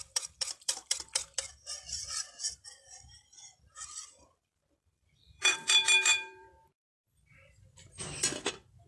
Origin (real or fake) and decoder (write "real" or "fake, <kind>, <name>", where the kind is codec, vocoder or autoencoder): fake, vocoder, BigVGAN v2